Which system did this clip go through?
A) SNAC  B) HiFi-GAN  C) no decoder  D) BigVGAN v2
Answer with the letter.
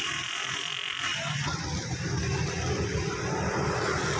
C